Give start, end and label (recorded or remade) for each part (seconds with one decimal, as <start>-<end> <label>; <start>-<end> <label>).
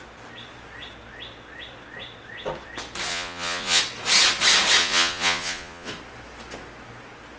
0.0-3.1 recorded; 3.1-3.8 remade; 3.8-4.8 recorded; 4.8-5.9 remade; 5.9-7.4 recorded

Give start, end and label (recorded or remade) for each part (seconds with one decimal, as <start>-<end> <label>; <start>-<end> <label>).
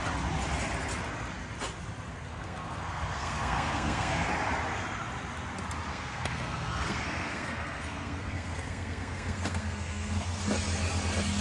0.0-2.1 recorded; 2.1-4.3 remade; 4.3-5.9 recorded; 5.9-10.4 remade; 10.4-11.4 recorded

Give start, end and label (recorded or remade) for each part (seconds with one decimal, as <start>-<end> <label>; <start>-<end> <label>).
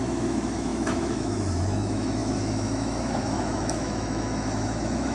0.0-5.1 remade